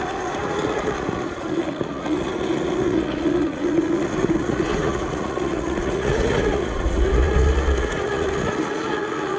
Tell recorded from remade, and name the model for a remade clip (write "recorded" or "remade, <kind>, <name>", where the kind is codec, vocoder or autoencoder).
remade, vocoder, Vocos